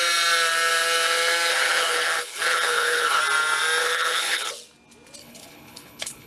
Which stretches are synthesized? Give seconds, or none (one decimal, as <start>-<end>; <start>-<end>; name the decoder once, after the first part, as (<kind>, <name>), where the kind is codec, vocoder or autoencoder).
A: 1.5-3.2 (codec, HILCodec); 3.8-4.5; 5.2-6.3

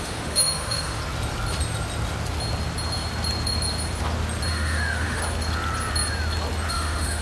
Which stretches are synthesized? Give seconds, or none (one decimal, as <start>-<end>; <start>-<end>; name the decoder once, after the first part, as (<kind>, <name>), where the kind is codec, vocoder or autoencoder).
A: 0.0-1.0 (autoencoder, DAC-VAE); 4.5-5.2; 6.7-7.2

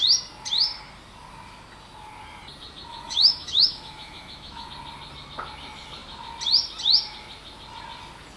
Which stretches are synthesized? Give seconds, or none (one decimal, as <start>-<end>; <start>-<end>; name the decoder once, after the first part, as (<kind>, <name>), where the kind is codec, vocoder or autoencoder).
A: 2.9-4.7 (autoencoder, DAC-VAE)

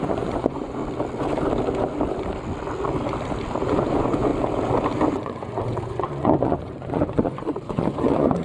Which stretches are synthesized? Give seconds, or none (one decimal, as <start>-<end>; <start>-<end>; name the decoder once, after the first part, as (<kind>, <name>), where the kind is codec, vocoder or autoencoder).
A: 0.0-0.8 (vocoder, Vocos); 3.6-4.3; 5.1-8.4

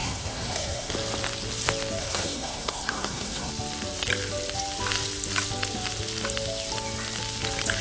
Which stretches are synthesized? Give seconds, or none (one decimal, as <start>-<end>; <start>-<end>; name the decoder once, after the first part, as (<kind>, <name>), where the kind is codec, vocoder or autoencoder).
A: 0.0-0.9 (codec, SNAC); 2.0-3.5

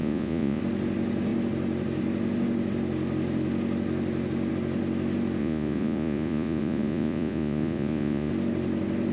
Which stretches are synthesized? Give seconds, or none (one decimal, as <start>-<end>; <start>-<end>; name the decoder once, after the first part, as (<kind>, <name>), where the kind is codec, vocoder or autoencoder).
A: 0.0-0.6 (vocoder, Vocos); 5.4-8.3

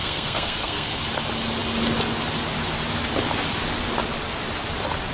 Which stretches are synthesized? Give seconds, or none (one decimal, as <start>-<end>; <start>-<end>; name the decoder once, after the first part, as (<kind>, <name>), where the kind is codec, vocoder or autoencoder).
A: 0.0-1.0 (codec, SNAC)

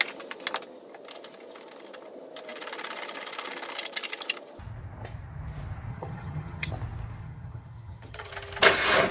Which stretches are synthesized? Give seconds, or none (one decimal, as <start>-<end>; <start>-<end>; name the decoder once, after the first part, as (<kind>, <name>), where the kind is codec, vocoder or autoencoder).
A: 5.9-6.7 (vocoder, HiFi-GAN); 7.2-8.3